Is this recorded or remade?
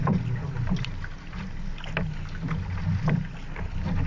recorded